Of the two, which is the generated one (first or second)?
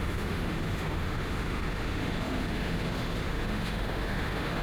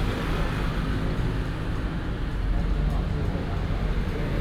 first